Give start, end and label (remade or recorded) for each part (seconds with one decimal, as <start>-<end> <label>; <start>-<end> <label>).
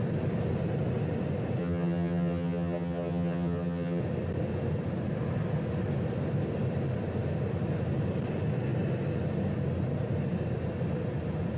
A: 0.0-1.6 recorded; 1.6-4.0 remade; 4.0-11.6 recorded